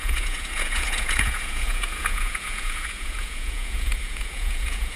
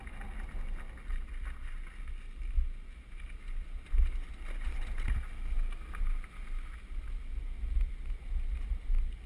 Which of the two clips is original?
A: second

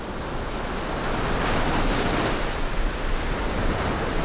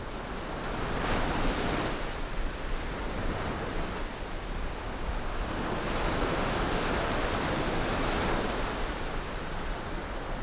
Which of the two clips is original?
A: first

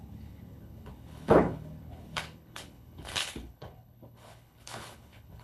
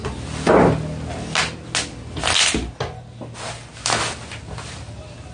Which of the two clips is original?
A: second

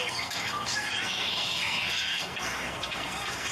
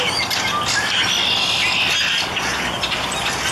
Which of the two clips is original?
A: second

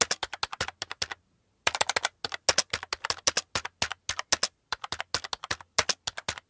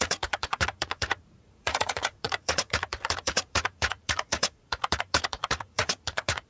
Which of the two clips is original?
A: first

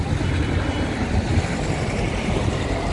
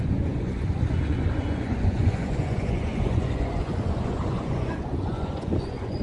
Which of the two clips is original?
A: first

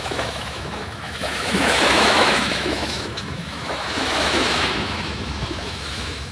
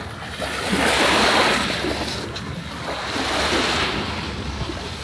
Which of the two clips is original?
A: second